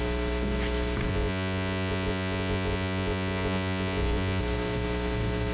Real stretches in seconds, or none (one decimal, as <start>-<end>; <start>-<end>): 0.0-1.1; 4.4-5.5